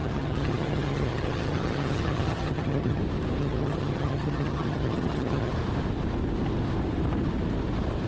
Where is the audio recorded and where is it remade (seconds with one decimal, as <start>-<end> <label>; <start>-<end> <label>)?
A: 0.0-3.0 remade; 3.0-3.4 recorded; 3.4-5.5 remade; 5.5-8.1 recorded